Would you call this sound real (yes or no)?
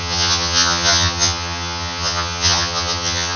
no